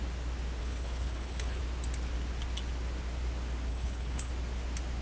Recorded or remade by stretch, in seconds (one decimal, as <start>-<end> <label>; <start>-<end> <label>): 0.0-0.6 recorded; 0.6-1.6 remade; 1.6-3.7 recorded; 3.7-4.3 remade; 4.3-5.0 recorded